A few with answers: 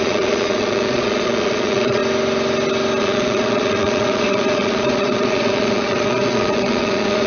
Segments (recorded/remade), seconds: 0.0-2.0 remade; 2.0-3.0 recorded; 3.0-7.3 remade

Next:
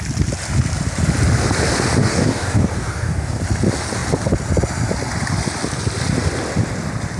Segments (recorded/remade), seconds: 0.0-2.0 recorded; 2.0-3.4 remade; 3.4-7.2 recorded

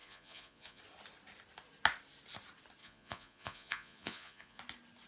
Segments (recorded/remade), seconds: 0.0-0.8 remade; 0.8-2.8 recorded; 2.8-4.6 remade; 4.6-5.1 recorded

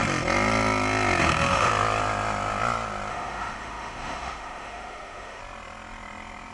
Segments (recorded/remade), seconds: 0.0-1.2 recorded; 1.2-1.7 remade; 1.7-3.1 recorded; 3.1-5.4 remade; 5.4-6.5 recorded